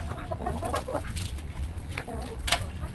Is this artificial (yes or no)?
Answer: yes